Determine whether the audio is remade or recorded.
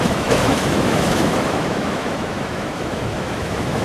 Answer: remade